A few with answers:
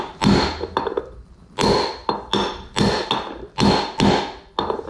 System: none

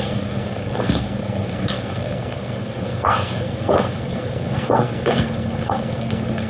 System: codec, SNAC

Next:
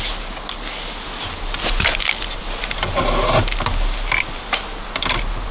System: none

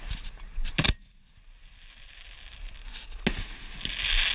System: none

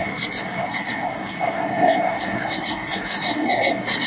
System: codec, SNAC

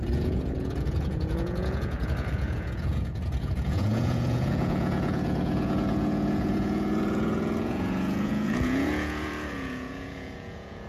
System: vocoder, Vocos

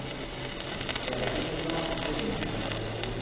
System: none